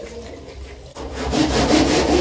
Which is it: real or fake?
real